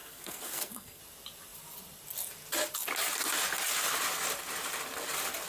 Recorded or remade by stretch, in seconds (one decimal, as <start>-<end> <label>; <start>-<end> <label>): 0.0-1.0 remade; 1.0-5.5 recorded